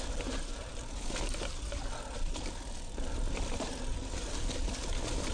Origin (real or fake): real